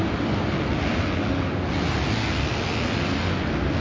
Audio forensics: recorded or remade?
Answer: recorded